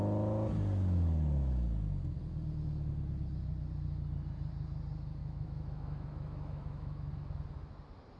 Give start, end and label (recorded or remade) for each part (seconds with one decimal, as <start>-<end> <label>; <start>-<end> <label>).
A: 0.0-5.2 recorded; 5.2-7.1 remade; 7.1-8.2 recorded